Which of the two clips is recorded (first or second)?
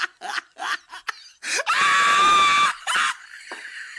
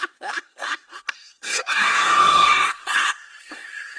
first